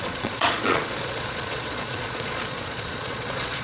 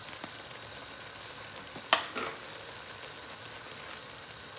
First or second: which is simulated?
first